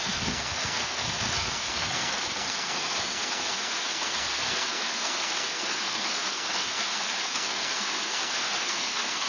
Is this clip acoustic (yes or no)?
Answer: no